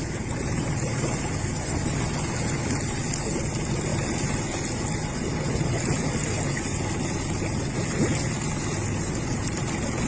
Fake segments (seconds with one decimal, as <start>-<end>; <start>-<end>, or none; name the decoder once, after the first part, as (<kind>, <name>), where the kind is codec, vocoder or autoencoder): none

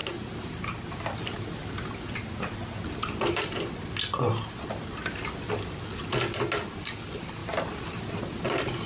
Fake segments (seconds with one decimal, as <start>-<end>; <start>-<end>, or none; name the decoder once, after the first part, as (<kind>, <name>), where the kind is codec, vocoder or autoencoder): 0.0-0.6 (vocoder, BigVGAN v2); 7.4-8.2

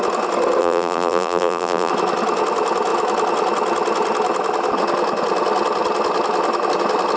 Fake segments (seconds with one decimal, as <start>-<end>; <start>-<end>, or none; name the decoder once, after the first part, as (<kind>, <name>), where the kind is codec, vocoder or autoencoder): 0.6-1.9 (vocoder, BigVGAN v2)

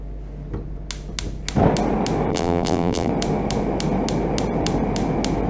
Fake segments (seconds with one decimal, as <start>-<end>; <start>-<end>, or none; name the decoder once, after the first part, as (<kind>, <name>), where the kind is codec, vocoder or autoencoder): 2.3-3.1 (vocoder, BigVGAN v2)

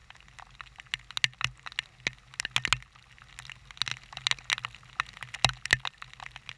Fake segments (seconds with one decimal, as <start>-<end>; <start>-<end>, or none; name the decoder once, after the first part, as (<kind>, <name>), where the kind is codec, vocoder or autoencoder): none